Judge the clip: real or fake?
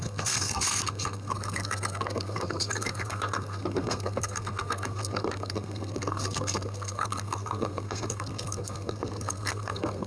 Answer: fake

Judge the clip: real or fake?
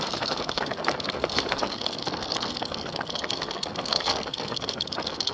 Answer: fake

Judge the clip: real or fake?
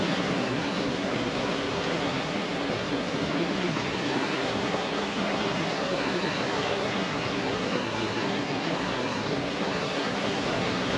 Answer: fake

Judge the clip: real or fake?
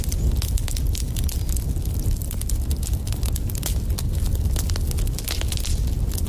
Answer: real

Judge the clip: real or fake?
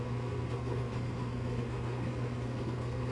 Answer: fake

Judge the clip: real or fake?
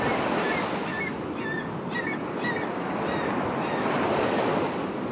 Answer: real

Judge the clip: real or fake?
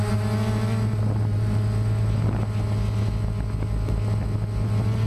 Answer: real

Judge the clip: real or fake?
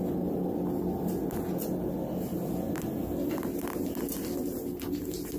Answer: real